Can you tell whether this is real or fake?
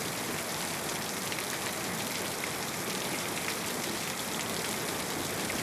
fake